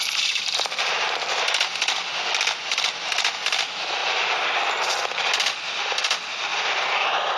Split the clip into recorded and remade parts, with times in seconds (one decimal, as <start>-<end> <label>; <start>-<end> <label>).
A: 0.0-7.4 recorded